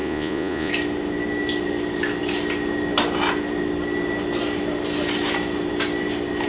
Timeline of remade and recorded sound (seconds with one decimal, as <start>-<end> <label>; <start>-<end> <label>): 0.0-0.7 remade; 0.7-6.5 recorded